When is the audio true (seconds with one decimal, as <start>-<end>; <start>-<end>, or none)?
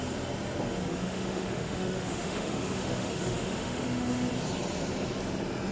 0.0-0.9; 4.3-5.7